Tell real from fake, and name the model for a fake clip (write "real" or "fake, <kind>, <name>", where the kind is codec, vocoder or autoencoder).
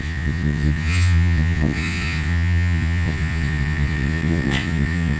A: fake, vocoder, Vocos